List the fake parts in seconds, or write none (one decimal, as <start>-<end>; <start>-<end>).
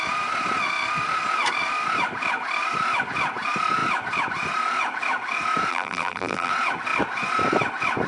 5.7-6.5